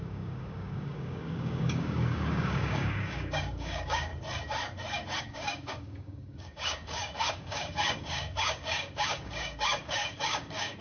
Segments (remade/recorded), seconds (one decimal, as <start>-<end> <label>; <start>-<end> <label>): 0.0-4.1 remade; 4.1-5.2 recorded; 5.2-10.8 remade